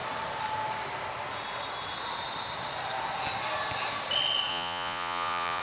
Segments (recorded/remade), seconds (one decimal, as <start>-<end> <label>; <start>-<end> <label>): 0.0-4.5 recorded; 4.5-5.6 remade